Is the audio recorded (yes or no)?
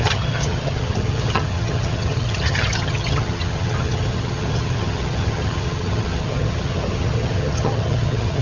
no